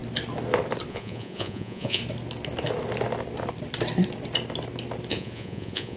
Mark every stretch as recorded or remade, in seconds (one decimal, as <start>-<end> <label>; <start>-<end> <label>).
0.0-0.9 recorded; 0.9-2.0 remade; 2.0-5.1 recorded; 5.1-6.0 remade